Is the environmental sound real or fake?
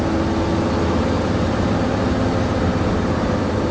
real